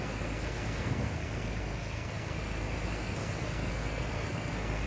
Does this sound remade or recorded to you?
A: remade